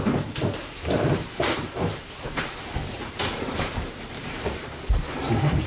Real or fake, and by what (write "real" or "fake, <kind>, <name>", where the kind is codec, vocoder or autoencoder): fake, vocoder, BigVGAN v2